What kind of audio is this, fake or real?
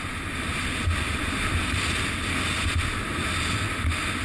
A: real